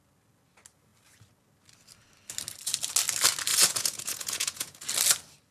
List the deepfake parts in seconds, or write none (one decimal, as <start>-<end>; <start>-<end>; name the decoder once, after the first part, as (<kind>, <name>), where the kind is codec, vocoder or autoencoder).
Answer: 3.5-4.8 (vocoder, Vocos)